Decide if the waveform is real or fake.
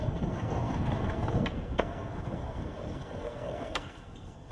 fake